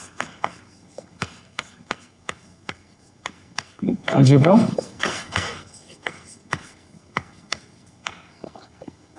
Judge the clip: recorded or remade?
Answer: remade